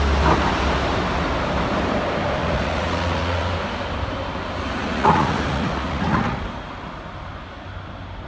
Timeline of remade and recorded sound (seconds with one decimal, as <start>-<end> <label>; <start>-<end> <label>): 0.0-2.4 recorded; 2.4-3.5 remade; 3.5-4.8 recorded; 4.8-6.4 remade; 6.4-8.3 recorded